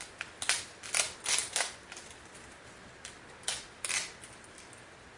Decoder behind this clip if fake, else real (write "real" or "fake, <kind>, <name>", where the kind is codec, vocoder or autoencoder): real